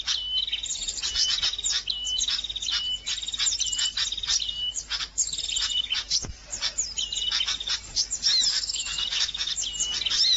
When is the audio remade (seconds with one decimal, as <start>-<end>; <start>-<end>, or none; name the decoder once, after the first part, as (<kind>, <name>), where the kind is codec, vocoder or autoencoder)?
8.5-9.5 (autoencoder, DAC-VAE)